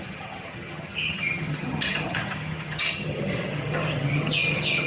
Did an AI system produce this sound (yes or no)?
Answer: yes